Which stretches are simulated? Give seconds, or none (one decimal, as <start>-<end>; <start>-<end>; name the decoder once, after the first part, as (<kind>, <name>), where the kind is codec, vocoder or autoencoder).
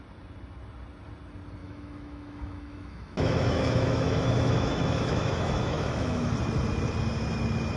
1.6-6.3 (autoencoder, DAC-VAE)